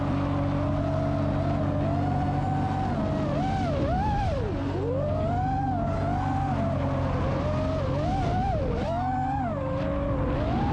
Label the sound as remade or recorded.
recorded